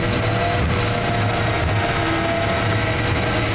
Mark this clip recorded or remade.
recorded